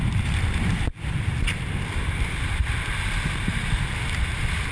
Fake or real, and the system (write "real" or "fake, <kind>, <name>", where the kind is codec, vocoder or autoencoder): real